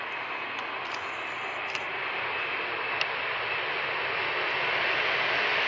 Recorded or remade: recorded